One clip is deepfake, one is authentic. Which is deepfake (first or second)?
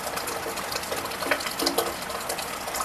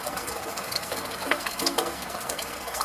second